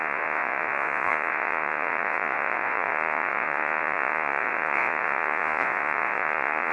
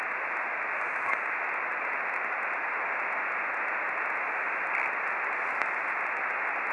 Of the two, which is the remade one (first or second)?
first